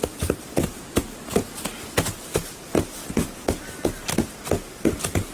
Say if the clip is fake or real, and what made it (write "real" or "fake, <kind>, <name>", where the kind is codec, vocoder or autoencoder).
real